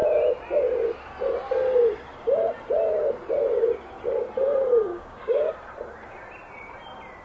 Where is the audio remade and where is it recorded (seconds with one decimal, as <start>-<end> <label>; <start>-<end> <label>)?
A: 0.0-4.9 recorded; 4.9-5.5 remade; 5.5-7.2 recorded